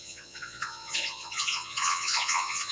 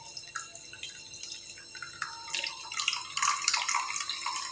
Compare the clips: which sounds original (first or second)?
second